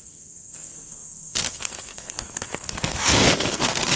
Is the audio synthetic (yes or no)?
yes